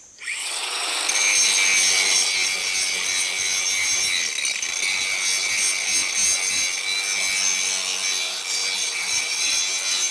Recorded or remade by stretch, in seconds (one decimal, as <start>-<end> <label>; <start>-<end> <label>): 0.0-0.4 recorded; 0.4-1.0 remade; 1.0-8.8 recorded; 8.8-9.6 remade; 9.6-10.1 recorded